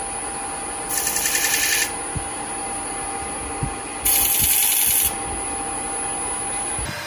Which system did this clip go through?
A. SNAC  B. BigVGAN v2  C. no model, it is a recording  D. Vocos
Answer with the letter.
C